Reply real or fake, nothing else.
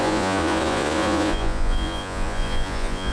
fake